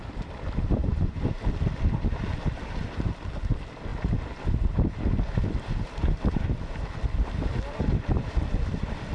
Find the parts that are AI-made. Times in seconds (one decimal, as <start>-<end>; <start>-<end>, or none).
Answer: 0.8-1.3